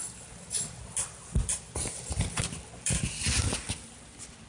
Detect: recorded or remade recorded